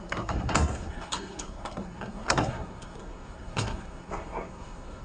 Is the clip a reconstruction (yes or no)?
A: yes